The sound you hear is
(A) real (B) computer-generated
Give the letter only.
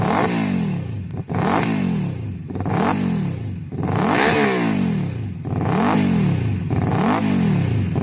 A